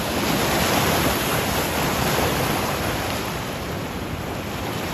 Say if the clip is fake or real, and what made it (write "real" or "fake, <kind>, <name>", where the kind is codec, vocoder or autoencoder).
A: real